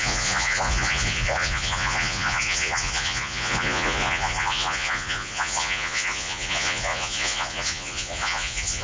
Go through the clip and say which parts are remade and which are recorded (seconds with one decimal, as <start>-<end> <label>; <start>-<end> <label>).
0.0-8.8 remade